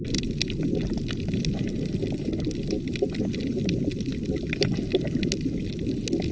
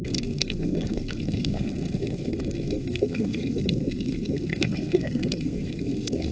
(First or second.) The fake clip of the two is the second